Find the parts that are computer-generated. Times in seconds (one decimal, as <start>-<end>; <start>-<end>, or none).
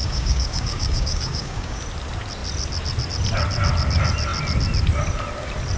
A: 0.0-1.8